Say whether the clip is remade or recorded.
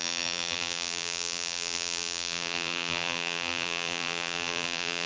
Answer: remade